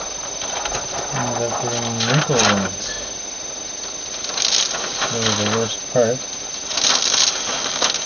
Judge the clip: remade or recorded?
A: recorded